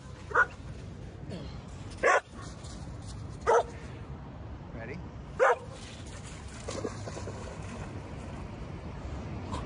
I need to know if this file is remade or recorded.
recorded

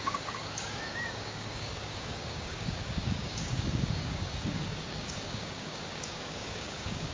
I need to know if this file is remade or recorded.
remade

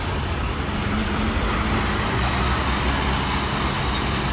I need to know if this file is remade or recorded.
recorded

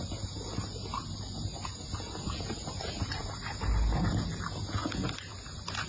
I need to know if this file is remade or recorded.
recorded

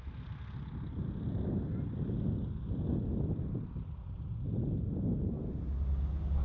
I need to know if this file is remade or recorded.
recorded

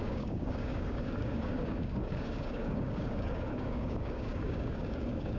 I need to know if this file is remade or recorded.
remade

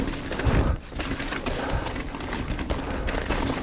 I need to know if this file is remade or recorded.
recorded